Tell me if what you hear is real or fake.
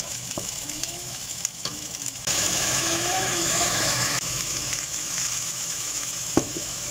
fake